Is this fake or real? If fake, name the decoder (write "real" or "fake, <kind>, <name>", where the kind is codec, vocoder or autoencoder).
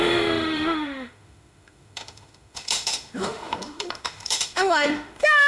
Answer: fake, autoencoder, DAC-VAE